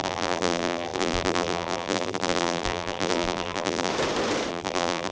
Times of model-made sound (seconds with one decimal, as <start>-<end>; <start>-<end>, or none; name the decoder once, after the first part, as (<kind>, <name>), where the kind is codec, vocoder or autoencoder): 0.0-3.9 (vocoder, BigVGAN v2); 4.5-5.1